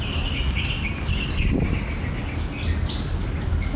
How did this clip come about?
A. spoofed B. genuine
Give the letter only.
B